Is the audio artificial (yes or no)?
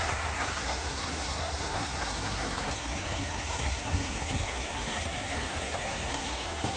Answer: yes